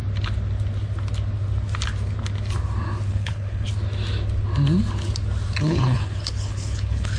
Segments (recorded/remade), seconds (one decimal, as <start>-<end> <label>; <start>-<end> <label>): 0.0-3.1 recorded; 3.1-3.7 remade; 3.7-5.6 recorded; 5.6-7.2 remade